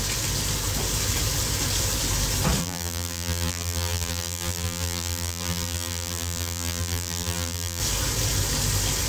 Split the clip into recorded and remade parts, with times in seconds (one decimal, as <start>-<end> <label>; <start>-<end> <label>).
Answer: 0.0-2.6 recorded; 2.6-7.8 remade; 7.8-9.1 recorded